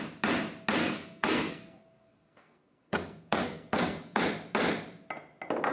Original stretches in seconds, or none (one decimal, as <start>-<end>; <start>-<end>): 0.0-0.8; 4.2-5.7